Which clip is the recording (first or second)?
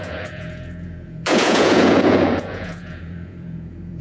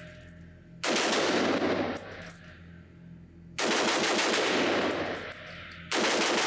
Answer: second